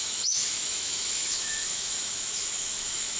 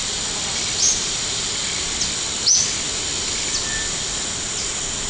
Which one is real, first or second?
second